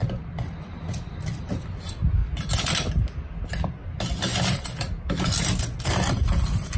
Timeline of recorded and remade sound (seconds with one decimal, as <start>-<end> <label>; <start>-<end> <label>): 0.0-6.8 recorded